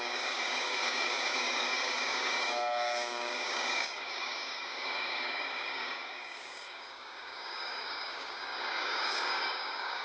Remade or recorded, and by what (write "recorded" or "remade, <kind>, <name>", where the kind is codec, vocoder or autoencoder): remade, codec, DAC